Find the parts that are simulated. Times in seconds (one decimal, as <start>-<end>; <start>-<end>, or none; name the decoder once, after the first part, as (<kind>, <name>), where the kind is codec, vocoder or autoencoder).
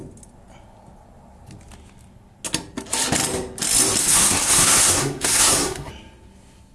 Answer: 4.0-5.9 (codec, SNAC)